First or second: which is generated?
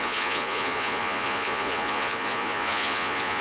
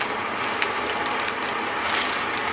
first